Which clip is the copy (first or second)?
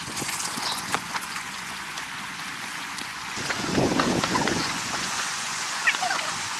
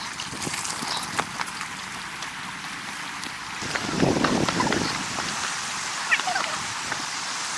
first